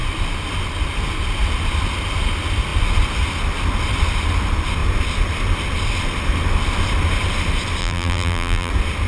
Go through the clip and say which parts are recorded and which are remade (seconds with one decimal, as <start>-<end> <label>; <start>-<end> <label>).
0.0-7.8 recorded; 7.8-8.7 remade; 8.7-9.1 recorded